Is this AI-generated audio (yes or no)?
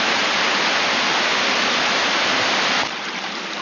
no